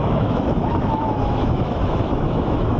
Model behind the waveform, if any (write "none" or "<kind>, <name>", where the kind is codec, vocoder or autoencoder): autoencoder, DAC-VAE